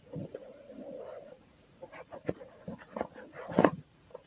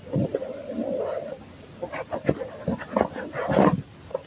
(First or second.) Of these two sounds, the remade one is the first